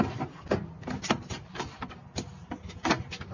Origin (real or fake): real